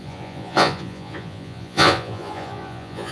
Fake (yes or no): yes